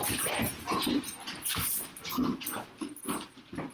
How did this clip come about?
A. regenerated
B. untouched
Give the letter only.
A